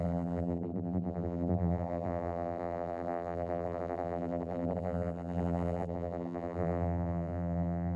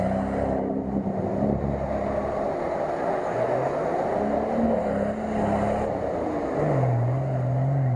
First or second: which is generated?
first